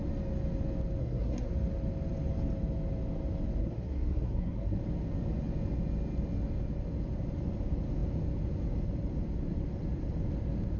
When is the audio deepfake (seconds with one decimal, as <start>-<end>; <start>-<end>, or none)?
1.0-1.5; 3.6-4.8